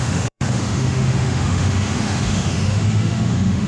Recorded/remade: remade